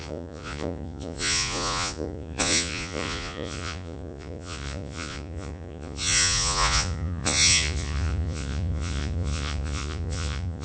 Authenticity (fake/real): fake